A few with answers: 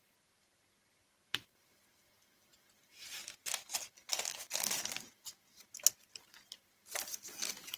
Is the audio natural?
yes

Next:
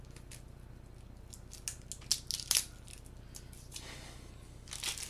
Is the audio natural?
yes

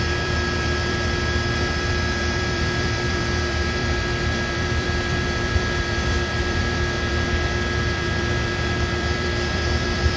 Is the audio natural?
no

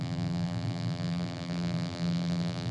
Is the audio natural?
no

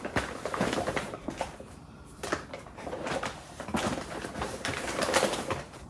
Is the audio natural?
no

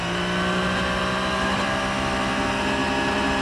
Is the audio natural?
yes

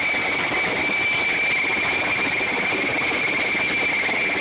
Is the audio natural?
yes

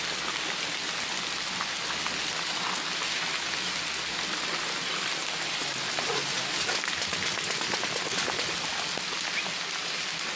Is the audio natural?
yes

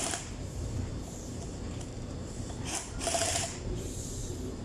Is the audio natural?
no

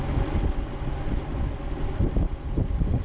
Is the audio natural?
yes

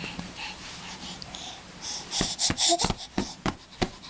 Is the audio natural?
no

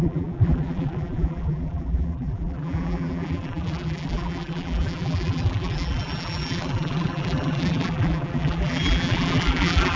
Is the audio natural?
no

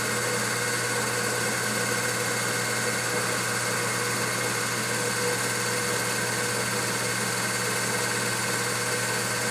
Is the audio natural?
yes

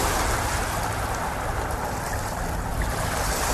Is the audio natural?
yes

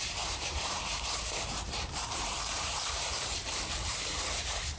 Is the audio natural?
no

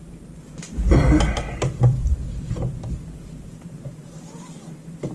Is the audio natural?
no